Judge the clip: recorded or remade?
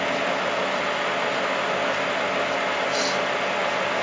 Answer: recorded